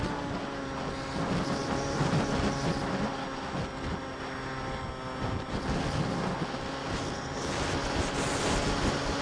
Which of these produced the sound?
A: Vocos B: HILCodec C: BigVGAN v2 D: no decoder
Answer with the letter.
D